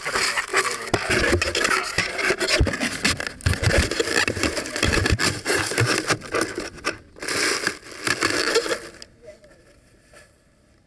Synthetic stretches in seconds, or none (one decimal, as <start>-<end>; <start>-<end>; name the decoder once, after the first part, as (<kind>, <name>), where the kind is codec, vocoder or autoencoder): none